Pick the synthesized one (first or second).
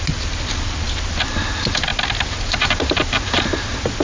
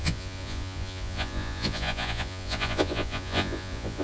second